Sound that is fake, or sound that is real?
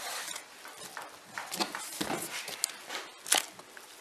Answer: real